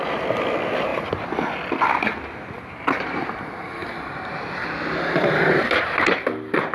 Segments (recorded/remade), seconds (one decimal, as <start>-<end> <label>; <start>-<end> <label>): 0.0-6.7 recorded